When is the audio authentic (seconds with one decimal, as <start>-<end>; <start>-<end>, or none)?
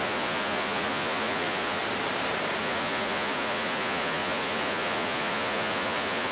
1.8-2.6